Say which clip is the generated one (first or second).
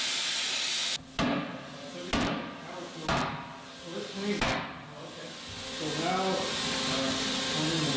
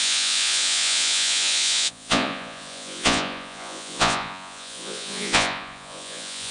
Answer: second